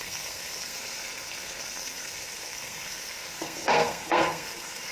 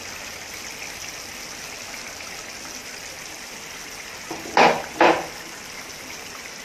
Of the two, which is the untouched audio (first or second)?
second